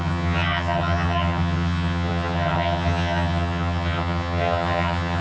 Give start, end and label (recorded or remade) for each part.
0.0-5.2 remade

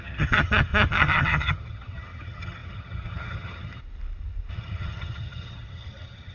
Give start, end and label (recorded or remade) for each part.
0.0-3.8 remade; 3.8-4.5 recorded; 4.5-6.3 remade

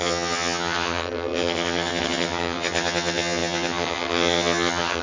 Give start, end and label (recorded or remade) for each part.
0.0-5.0 remade